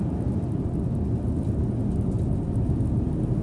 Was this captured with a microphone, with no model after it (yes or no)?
yes